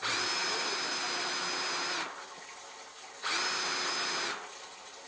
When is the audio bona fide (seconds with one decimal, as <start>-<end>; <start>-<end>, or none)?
0.0-5.1